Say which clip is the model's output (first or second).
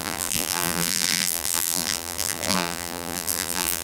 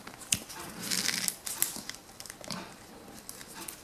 first